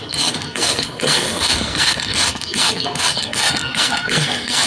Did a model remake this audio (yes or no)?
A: yes